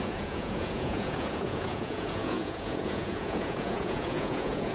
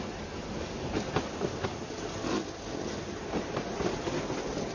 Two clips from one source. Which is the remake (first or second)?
first